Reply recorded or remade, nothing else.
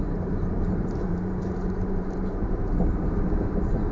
remade